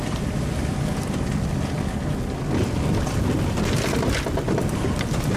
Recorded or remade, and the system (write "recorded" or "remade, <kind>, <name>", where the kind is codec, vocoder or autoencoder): recorded